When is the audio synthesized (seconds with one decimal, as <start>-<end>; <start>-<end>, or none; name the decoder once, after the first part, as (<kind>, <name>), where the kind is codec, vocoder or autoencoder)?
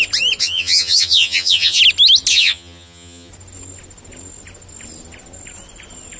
0.4-1.8 (vocoder, HiFi-GAN); 2.3-3.3